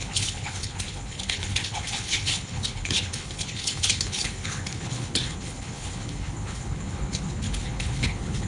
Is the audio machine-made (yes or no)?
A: yes